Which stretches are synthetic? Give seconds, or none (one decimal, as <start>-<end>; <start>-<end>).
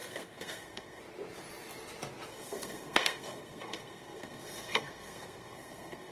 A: 0.0-1.0; 2.3-6.1